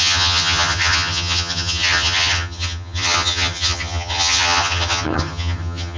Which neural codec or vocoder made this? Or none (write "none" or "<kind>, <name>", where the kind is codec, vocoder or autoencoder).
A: vocoder, HiFi-GAN